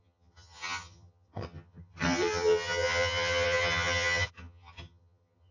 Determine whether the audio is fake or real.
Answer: fake